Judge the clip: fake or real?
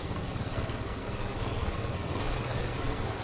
fake